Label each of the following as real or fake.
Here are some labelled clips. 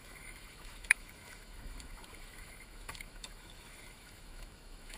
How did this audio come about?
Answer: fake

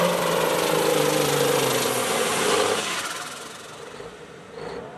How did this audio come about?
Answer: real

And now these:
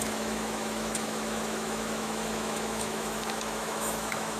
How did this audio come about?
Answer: fake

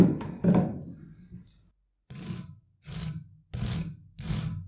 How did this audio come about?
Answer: real